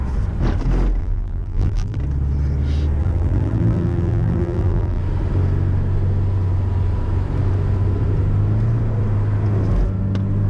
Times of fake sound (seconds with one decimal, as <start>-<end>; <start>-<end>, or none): 1.0-2.0; 3.0-5.0